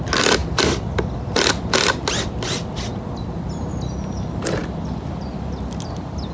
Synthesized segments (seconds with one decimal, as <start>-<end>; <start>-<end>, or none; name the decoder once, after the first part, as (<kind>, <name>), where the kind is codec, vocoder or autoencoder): none